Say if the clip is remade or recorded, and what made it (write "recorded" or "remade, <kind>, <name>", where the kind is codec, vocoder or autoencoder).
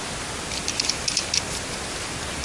recorded